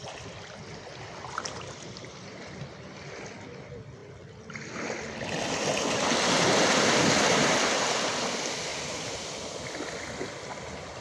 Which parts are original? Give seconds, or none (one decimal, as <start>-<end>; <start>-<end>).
0.0-11.0